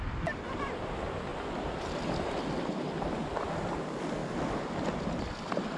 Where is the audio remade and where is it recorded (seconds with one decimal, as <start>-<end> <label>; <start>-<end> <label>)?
0.0-5.8 recorded